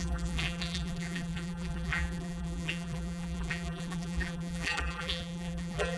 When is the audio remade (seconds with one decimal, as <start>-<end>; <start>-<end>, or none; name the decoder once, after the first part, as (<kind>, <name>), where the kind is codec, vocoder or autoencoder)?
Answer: 0.0-6.0 (vocoder, BigVGAN v2)